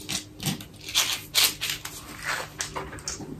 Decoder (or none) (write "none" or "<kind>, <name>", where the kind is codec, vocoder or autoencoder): none